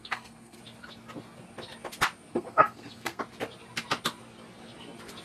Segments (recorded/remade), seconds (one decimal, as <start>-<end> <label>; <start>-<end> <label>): 0.0-0.6 remade; 0.6-2.3 recorded; 2.3-3.2 remade; 3.2-5.2 recorded